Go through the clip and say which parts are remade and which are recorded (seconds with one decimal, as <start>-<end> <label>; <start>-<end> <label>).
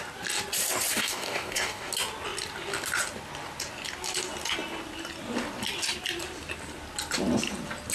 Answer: 0.0-0.9 recorded; 0.9-1.9 remade; 1.9-7.9 recorded